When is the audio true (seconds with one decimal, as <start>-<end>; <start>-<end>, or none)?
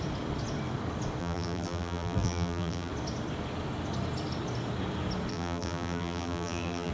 0.0-1.2; 2.9-5.3